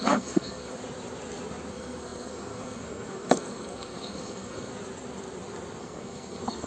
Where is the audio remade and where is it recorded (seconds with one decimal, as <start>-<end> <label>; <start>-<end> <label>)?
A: 0.0-0.7 remade; 0.7-1.7 recorded; 1.7-4.7 remade; 4.7-5.8 recorded; 5.8-6.7 remade